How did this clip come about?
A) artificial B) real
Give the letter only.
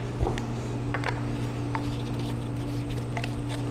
B